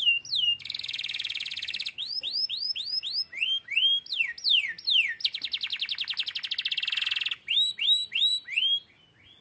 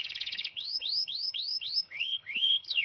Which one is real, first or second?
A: first